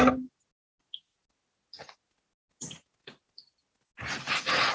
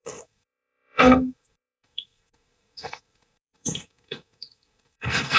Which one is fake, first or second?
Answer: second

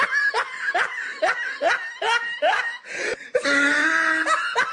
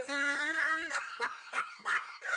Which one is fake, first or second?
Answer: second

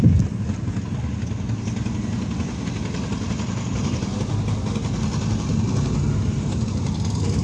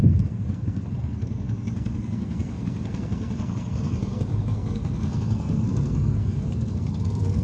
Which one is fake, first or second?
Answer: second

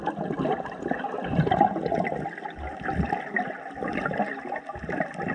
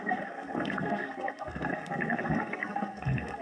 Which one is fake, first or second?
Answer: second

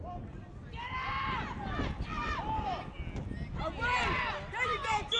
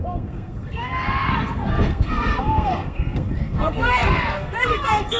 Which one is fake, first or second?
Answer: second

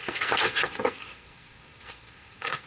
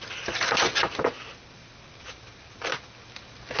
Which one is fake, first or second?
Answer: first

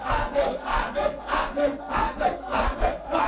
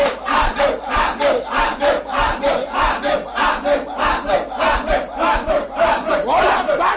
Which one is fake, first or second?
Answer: first